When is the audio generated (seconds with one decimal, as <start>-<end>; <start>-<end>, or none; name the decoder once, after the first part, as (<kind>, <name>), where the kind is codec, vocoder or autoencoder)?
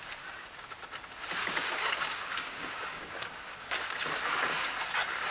1.4-3.8 (codec, DAC)